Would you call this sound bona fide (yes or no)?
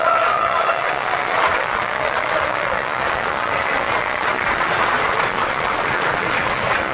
no